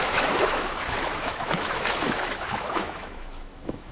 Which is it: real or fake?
fake